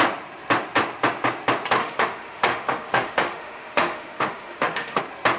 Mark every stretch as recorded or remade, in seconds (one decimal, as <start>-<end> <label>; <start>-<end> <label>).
0.0-1.8 recorded; 1.8-5.0 remade; 5.0-5.4 recorded